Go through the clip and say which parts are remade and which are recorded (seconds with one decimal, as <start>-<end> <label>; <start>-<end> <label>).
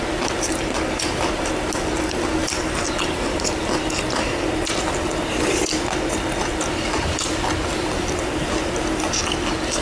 0.0-9.8 recorded